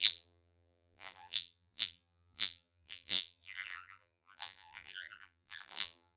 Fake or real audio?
fake